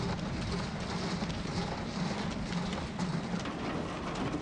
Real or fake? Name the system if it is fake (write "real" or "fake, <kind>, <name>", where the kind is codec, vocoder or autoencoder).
real